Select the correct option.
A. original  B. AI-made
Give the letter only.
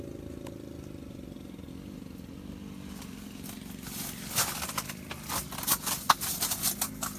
A